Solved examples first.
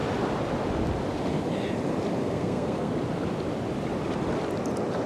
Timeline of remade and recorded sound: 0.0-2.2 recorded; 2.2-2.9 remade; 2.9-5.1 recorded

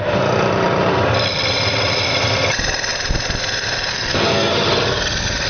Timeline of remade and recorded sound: 0.0-3.9 recorded; 3.9-4.5 remade; 4.5-5.5 recorded

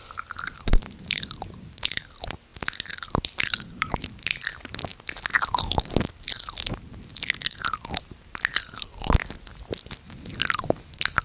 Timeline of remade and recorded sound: 0.0-11.2 recorded

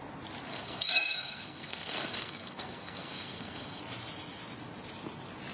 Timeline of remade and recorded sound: 0.0-0.5 recorded; 0.5-3.8 remade; 3.8-5.5 recorded

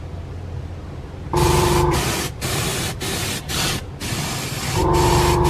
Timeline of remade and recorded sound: 0.0-2.7 remade; 2.7-5.1 recorded; 5.1-5.5 remade